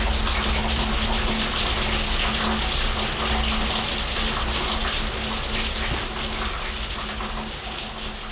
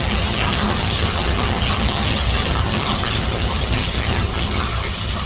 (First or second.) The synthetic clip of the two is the second